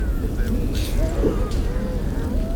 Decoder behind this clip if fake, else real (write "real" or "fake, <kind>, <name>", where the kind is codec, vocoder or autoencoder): real